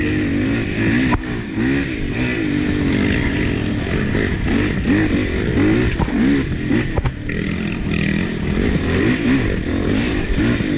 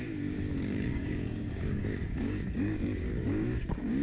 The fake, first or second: second